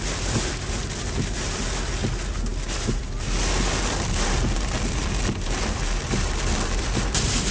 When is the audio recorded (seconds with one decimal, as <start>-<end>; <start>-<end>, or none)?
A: 0.0-7.5